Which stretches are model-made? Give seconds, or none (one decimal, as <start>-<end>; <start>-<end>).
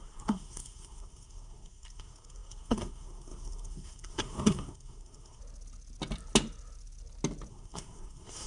0.0-5.4; 7.5-8.5